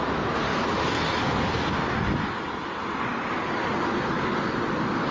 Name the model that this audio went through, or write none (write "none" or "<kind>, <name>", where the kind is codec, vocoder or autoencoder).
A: none